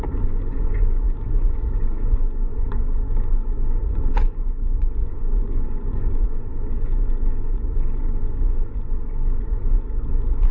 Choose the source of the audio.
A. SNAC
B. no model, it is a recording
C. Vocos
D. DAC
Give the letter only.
C